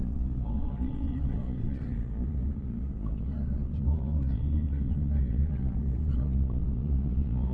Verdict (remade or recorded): remade